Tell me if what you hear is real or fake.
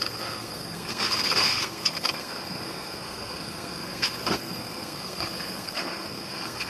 fake